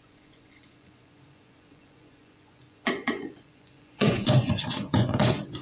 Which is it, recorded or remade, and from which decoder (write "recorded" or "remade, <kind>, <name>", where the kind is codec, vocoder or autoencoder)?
remade, vocoder, Vocos